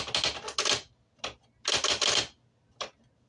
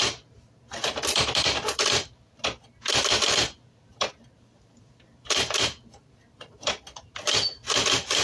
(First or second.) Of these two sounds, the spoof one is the second